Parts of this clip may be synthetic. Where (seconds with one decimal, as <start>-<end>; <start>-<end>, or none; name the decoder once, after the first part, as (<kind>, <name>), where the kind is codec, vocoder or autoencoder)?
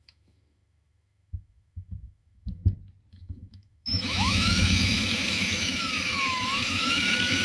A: 0.0-2.6 (autoencoder, DAC-VAE); 3.1-7.4